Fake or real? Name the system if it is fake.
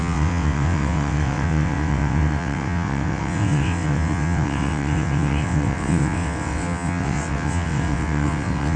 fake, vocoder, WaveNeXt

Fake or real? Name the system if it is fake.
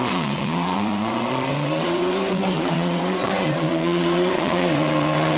fake, vocoder, WaveNeXt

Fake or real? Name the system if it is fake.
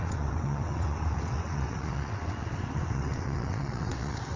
fake, vocoder, WaveNeXt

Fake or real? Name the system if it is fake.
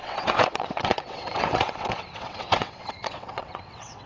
fake, vocoder, WaveNeXt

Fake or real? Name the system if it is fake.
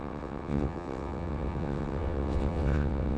fake, vocoder, WaveNeXt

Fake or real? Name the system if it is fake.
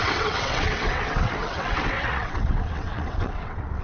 fake, vocoder, WaveNeXt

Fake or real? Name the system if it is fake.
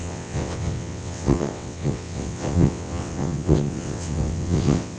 fake, vocoder, WaveNeXt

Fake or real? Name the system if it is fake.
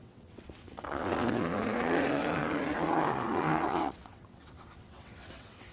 fake, vocoder, WaveNeXt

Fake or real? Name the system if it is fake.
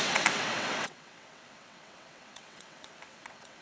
fake, vocoder, WaveNeXt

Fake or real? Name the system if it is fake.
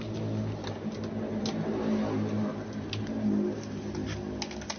real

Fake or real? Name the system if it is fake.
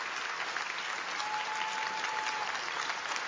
real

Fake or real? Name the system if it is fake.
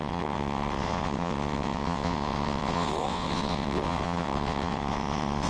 fake, vocoder, WaveNeXt